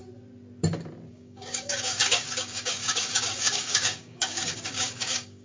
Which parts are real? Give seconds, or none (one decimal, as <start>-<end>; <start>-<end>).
0.0-1.1